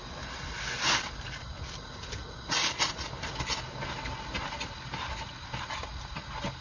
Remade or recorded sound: recorded